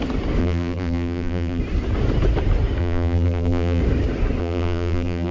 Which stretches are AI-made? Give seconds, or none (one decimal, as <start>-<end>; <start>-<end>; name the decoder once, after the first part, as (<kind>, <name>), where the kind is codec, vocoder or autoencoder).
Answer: 0.4-1.6 (vocoder, BigVGAN v2); 2.8-3.8; 4.4-5.3